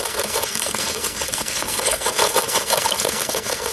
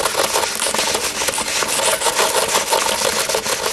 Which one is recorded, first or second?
second